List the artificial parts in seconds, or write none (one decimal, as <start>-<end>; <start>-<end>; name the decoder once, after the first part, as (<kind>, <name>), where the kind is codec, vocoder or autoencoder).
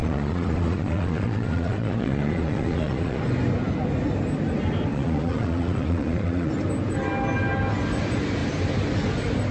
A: 0.0-3.2 (vocoder, Vocos); 4.9-6.5